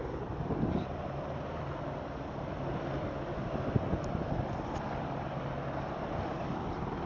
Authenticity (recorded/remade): recorded